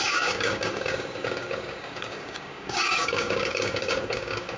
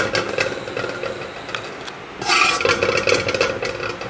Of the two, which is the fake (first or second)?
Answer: first